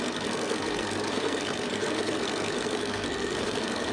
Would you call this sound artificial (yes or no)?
yes